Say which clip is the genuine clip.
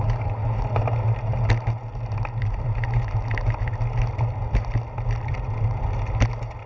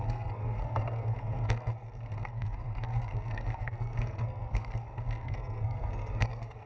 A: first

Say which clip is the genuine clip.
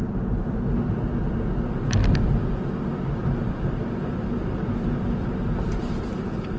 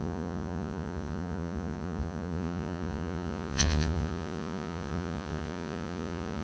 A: first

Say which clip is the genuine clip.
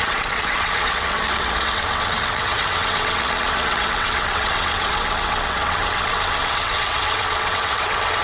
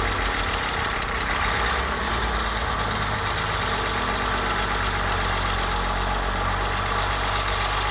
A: second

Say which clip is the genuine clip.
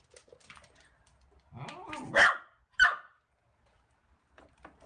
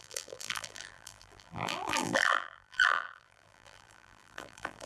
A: first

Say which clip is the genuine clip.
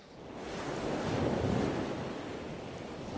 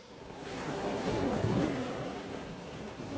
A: first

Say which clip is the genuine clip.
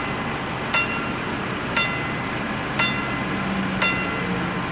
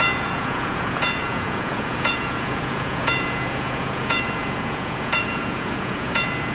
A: first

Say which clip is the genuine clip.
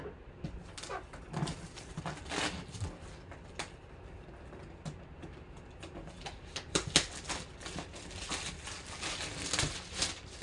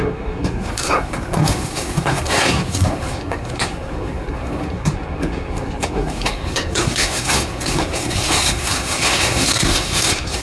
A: first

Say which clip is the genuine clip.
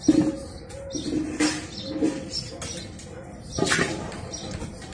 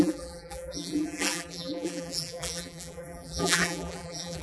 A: first